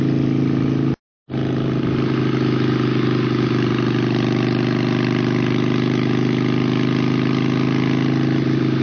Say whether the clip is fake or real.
real